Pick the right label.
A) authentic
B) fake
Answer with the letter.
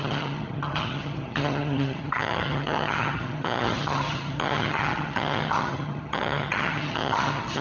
B